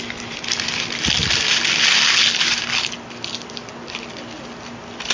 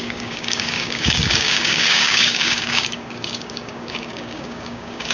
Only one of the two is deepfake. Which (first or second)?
second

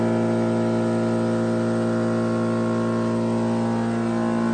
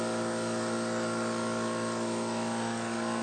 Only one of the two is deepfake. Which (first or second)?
second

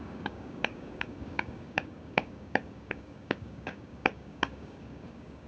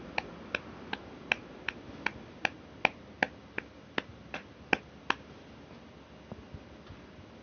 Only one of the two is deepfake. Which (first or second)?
first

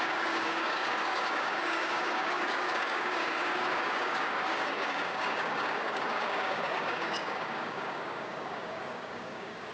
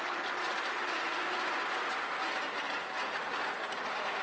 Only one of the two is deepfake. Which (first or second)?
first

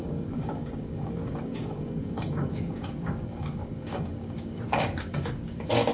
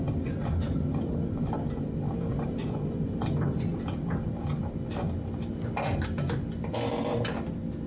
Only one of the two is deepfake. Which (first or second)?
first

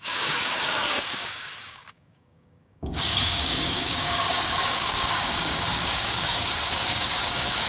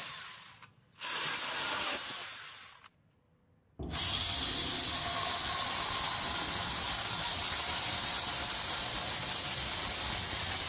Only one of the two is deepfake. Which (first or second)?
first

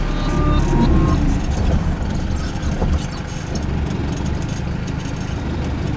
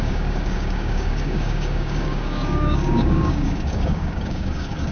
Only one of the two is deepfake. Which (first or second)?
second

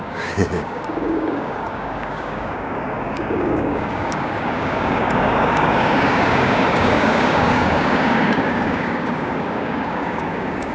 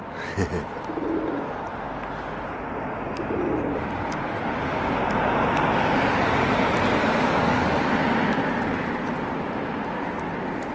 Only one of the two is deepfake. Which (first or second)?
first